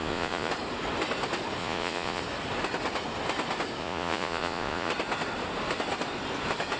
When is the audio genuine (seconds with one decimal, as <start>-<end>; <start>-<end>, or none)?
0.5-1.6; 2.2-3.8; 4.9-6.8